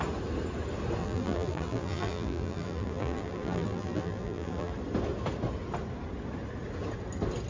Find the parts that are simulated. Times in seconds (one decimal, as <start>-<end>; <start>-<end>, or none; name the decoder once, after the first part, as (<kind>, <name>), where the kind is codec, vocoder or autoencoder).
1.0-4.7 (vocoder, BigVGAN v2)